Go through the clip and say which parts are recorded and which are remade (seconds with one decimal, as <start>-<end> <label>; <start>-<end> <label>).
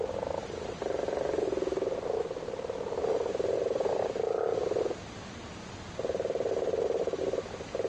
0.0-7.9 recorded